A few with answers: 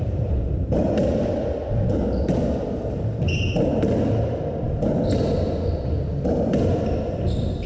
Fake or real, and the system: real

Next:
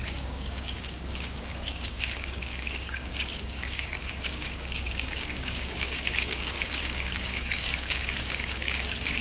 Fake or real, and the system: fake, codec, DAC